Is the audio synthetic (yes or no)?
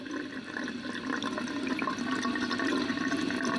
no